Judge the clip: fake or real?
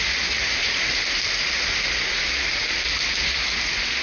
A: real